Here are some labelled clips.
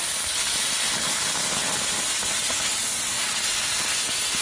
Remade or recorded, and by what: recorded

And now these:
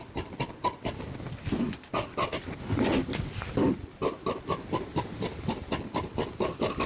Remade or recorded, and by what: recorded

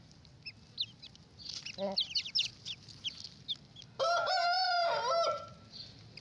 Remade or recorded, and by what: recorded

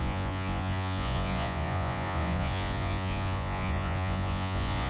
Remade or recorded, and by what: remade, vocoder, Vocos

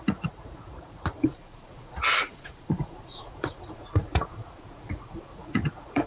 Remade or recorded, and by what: remade, vocoder, Vocos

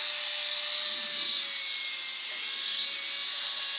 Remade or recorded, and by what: recorded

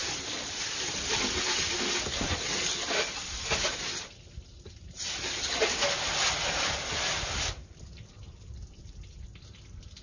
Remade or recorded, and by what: recorded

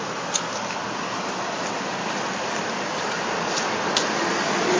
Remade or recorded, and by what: recorded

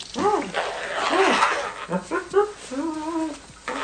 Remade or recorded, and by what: recorded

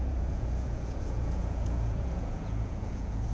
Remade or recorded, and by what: remade, vocoder, Vocos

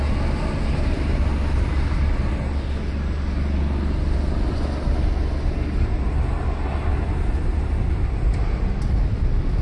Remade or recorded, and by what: recorded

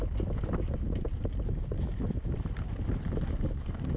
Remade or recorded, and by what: recorded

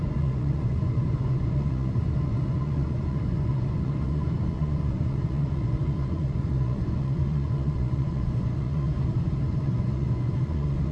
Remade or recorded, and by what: remade, vocoder, Vocos